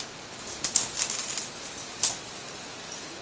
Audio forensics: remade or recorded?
recorded